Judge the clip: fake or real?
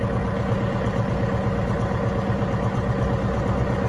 real